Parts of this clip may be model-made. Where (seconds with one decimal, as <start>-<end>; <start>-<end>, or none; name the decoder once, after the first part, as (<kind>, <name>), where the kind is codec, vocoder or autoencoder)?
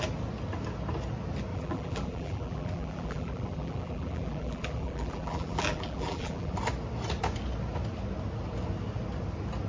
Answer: 1.5-6.6 (vocoder, BigVGAN v2)